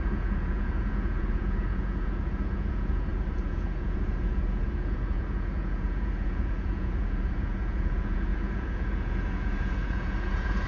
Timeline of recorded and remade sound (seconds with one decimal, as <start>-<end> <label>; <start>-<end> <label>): 0.0-10.7 remade

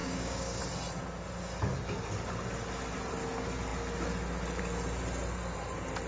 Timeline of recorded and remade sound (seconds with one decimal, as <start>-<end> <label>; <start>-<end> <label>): 0.0-0.6 remade; 0.6-6.1 recorded

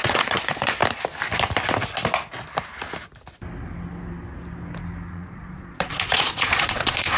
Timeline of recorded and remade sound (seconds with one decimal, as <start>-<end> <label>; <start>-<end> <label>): 0.0-0.8 remade; 0.8-5.1 recorded; 5.1-7.2 remade